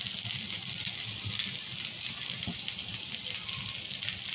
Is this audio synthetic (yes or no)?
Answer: no